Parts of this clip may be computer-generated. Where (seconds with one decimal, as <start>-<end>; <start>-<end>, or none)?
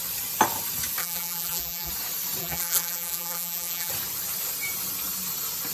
1.0-1.9; 2.4-3.9